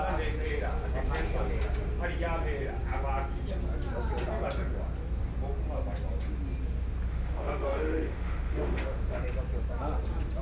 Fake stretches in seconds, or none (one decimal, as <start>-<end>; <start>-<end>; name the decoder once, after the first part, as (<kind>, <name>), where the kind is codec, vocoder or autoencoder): 7.1-9.2 (autoencoder, DAC-VAE)